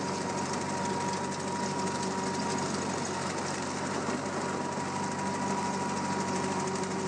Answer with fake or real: real